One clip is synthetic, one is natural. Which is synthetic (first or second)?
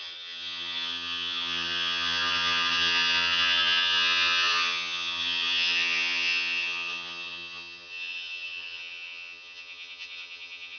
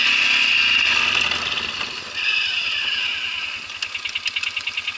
first